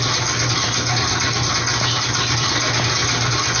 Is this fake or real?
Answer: real